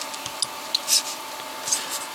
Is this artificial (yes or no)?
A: no